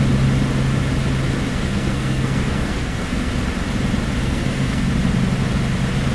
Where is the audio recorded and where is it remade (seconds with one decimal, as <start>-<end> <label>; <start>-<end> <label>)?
0.0-1.5 recorded; 1.5-3.3 remade; 3.3-4.2 recorded; 4.2-4.9 remade; 4.9-6.1 recorded